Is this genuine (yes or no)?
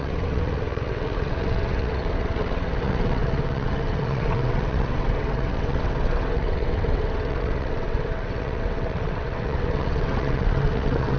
no